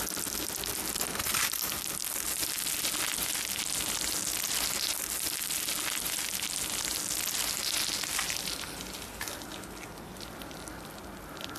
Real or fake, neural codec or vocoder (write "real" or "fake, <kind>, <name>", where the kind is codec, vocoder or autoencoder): real